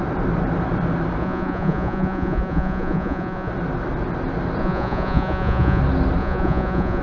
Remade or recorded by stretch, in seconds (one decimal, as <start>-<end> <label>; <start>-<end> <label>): 0.0-1.2 recorded; 1.2-3.5 remade; 3.5-4.6 recorded; 4.6-5.8 remade; 5.8-6.2 recorded; 6.2-7.0 remade